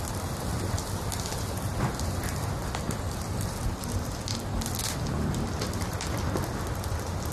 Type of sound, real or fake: real